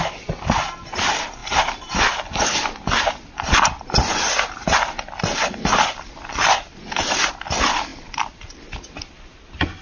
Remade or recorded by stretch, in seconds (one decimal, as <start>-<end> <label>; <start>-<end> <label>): 0.0-1.4 recorded; 1.4-1.9 remade; 1.9-9.8 recorded